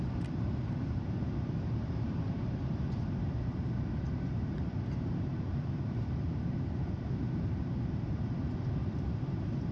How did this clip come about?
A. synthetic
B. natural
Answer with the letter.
A